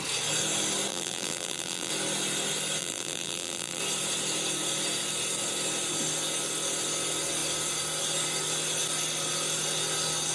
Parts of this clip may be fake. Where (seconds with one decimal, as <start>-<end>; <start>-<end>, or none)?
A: 0.9-1.9; 2.8-3.8